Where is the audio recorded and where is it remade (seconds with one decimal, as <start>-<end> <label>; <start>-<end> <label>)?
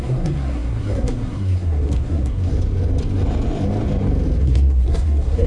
0.0-2.5 remade; 2.5-4.4 recorded; 4.4-5.5 remade